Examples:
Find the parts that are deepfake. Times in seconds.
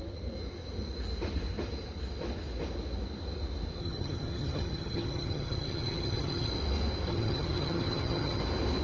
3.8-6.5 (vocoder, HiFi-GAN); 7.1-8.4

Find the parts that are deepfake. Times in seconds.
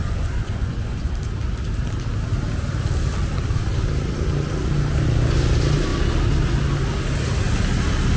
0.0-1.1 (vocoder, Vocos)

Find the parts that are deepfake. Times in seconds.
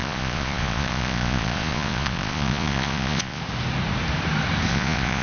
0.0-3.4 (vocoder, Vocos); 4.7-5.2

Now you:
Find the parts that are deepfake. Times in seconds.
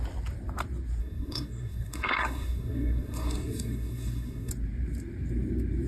1.0-4.5 (codec, SNAC)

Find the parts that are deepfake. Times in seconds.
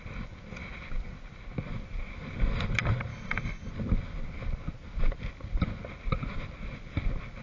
3.1-3.7 (autoencoder, DAC-VAE)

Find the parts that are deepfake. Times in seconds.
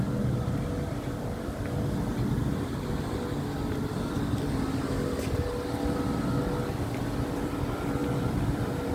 8.0-8.9 (vocoder, BigVGAN v2)